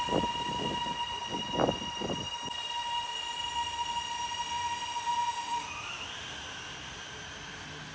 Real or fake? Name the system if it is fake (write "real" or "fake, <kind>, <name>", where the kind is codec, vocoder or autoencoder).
real